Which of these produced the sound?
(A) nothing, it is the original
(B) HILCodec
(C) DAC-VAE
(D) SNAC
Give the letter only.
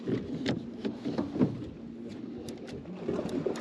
A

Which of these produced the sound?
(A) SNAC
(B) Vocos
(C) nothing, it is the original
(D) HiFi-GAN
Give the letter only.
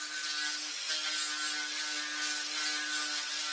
C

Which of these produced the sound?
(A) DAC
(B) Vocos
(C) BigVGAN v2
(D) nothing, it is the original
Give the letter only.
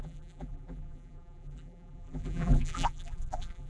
C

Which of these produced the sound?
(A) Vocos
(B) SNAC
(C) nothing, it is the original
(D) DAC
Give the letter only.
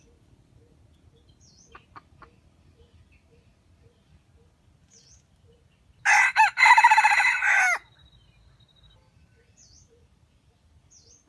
C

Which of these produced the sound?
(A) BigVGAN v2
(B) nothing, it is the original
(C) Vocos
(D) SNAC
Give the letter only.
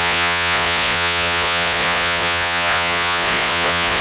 C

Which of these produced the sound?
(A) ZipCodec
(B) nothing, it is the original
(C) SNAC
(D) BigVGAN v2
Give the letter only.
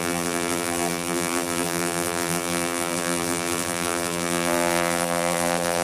D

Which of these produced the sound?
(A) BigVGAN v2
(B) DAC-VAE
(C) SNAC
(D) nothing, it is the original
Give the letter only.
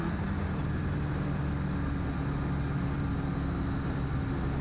D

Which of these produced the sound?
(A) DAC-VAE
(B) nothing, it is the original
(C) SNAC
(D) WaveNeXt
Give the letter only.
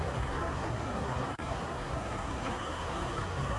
C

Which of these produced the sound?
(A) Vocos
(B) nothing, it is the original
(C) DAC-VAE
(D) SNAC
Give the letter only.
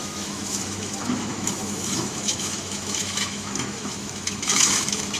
C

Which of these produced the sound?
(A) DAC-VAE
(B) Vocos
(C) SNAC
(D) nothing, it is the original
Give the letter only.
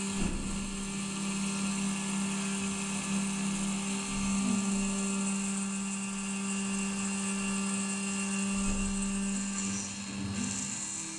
D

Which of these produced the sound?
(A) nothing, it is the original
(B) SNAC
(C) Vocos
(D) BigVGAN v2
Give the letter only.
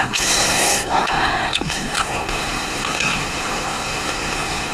B